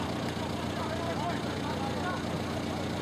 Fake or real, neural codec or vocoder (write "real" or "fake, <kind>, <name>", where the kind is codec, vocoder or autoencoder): real